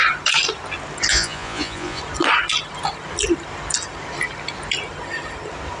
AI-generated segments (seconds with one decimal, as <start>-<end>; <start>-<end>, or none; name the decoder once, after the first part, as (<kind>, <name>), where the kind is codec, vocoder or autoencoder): 1.1-2.0 (vocoder, Vocos)